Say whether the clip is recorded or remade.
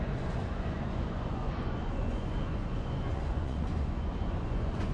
remade